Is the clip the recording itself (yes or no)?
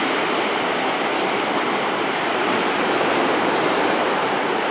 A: yes